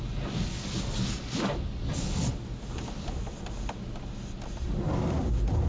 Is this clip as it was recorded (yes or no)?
yes